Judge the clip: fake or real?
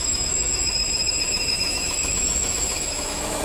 fake